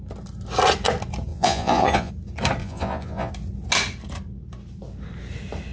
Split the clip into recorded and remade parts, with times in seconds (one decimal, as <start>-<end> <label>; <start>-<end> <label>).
0.0-1.3 recorded; 1.3-2.1 remade; 2.1-2.6 recorded; 2.6-3.3 remade; 3.3-5.7 recorded